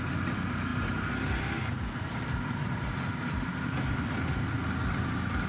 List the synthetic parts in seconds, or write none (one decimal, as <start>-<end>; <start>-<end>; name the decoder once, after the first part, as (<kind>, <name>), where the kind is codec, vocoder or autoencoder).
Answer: none